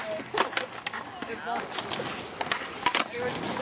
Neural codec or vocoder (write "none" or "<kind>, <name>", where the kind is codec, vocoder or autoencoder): none